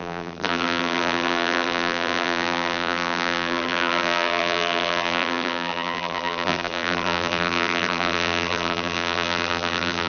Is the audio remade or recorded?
remade